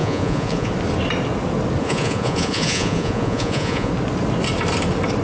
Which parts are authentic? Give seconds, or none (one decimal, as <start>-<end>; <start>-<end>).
0.7-1.8; 3.9-5.2